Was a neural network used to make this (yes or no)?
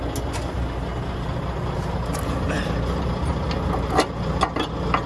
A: no